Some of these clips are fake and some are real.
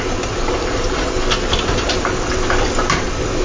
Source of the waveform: real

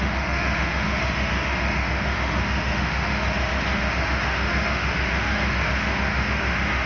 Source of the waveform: fake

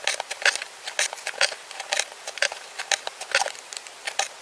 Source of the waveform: real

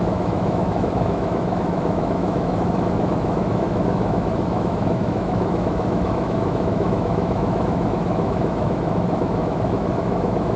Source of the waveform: fake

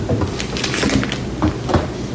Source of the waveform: real